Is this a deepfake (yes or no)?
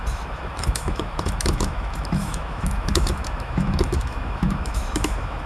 yes